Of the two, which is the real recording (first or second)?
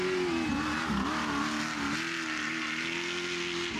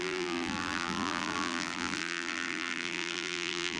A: first